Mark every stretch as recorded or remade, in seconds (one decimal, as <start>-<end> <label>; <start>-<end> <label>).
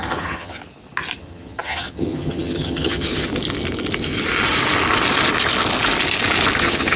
0.0-0.6 remade; 0.6-1.2 recorded; 1.2-3.3 remade; 3.3-6.6 recorded; 6.6-7.0 remade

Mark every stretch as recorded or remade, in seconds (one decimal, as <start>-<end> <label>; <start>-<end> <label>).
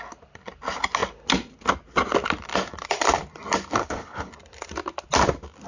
0.0-3.8 recorded; 3.8-4.3 remade; 4.3-5.7 recorded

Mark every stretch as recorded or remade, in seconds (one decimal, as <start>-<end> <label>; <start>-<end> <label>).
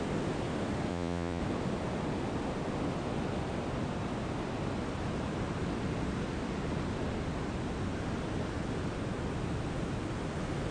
0.0-0.9 recorded; 0.9-1.4 remade; 1.4-10.7 recorded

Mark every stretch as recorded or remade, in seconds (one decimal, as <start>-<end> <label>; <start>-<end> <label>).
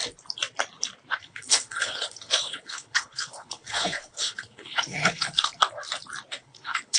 0.0-1.2 recorded; 1.2-5.6 remade; 5.6-6.4 recorded; 6.4-7.0 remade